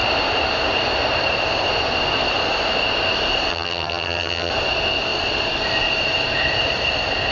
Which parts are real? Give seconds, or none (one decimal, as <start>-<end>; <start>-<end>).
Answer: 0.0-3.5; 4.5-7.3